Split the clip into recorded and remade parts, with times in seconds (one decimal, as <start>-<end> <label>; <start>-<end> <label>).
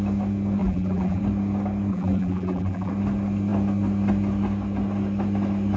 0.0-0.6 recorded; 0.6-1.2 remade; 1.2-1.9 recorded; 1.9-2.9 remade; 2.9-5.8 recorded